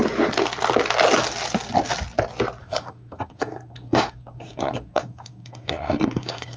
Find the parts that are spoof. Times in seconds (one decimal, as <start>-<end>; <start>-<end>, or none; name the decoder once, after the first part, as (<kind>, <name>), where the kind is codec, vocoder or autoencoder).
2.6-6.6 (codec, SNAC)

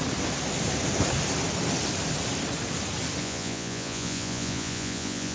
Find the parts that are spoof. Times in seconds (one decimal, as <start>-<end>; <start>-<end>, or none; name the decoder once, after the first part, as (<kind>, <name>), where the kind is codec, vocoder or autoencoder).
3.2-5.3 (vocoder, Vocos)

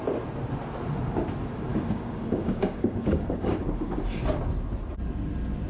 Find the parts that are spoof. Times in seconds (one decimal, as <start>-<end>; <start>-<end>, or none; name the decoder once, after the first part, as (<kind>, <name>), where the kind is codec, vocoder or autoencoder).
1.7-4.0 (codec, DAC)

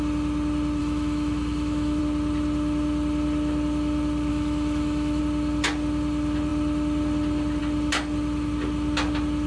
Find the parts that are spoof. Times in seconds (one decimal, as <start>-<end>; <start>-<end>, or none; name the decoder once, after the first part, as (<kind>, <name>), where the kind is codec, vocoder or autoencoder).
0.8-2.0 (autoencoder, DAC-VAE); 4.3-5.2

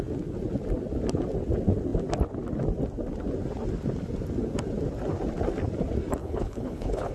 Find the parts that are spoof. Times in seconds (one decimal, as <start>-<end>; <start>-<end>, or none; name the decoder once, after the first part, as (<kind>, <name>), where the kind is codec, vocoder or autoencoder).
6.2-7.1 (codec, HILCodec)

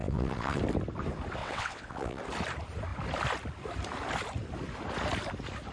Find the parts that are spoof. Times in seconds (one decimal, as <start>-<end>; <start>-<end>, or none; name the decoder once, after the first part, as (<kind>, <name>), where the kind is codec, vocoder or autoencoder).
0.0-0.6 (vocoder, WaveNeXt); 1.4-2.2

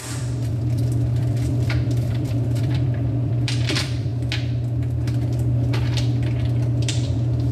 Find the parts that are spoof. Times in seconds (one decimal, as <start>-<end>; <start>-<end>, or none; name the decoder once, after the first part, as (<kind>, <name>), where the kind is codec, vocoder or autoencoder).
0.0-4.1 (vocoder, BigVGAN v2); 6.8-7.5